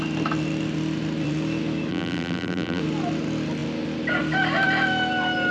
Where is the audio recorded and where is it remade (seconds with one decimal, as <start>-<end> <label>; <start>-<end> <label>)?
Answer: 0.0-1.9 recorded; 1.9-2.8 remade; 2.8-5.5 recorded